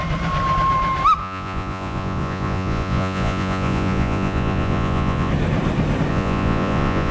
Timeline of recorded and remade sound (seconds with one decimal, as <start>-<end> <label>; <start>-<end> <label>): 0.0-1.2 recorded; 1.2-5.3 remade; 5.3-6.1 recorded; 6.1-7.1 remade

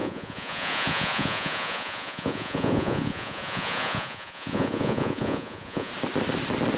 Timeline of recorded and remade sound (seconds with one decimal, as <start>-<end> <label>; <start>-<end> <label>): 0.0-5.9 remade; 5.9-6.8 recorded

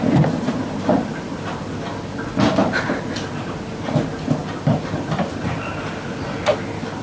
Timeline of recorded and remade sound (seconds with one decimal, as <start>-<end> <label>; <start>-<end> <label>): 0.0-7.0 recorded

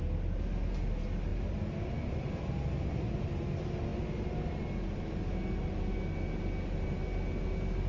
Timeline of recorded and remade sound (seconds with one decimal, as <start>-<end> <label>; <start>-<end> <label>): 0.0-7.9 recorded

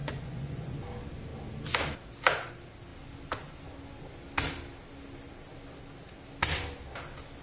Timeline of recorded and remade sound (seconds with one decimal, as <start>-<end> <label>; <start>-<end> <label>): 0.0-0.7 remade; 0.7-7.4 recorded

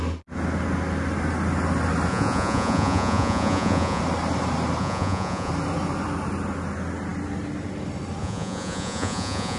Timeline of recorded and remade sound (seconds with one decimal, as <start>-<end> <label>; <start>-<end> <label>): 0.0-2.1 recorded; 2.1-4.0 remade; 4.0-4.8 recorded; 4.8-5.5 remade; 5.5-8.2 recorded; 8.2-9.6 remade

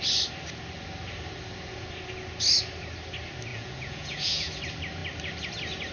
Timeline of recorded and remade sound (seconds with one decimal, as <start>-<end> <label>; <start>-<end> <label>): 0.0-3.5 recorded; 3.5-4.6 remade; 4.6-5.9 recorded